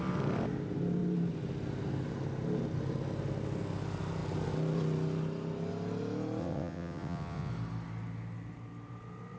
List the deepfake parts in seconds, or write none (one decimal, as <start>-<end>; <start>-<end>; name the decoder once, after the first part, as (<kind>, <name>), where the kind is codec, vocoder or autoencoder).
6.4-7.5 (vocoder, WaveNeXt)